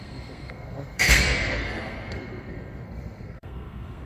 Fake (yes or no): yes